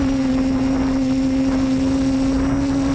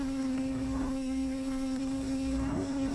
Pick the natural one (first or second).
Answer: first